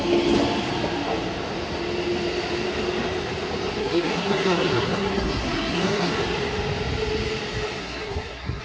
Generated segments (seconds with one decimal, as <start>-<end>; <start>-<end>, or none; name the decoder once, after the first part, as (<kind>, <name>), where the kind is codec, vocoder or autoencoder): 3.8-6.1 (codec, SNAC); 7.8-8.6

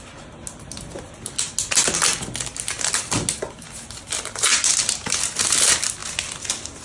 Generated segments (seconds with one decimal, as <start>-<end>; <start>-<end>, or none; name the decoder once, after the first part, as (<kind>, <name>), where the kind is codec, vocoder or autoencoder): none

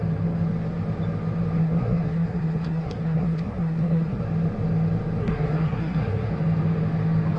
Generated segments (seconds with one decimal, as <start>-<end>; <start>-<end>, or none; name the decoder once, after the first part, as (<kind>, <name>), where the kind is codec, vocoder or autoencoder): 1.6-4.2 (codec, SNAC); 5.2-6.3

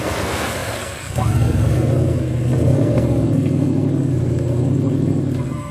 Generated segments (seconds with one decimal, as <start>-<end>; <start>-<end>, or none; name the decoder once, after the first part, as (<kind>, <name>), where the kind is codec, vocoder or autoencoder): 0.0-5.7 (codec, SNAC)

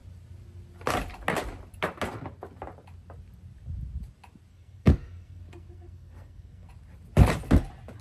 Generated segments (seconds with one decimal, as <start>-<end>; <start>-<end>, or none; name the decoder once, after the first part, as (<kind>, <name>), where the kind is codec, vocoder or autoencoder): 4.5-6.7 (codec, SNAC)